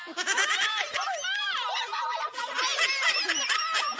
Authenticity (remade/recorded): recorded